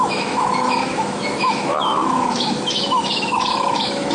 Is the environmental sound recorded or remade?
remade